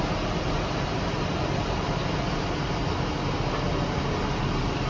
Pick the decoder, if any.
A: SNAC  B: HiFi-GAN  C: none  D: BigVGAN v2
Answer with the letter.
C